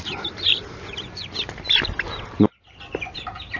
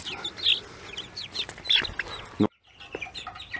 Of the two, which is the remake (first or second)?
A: first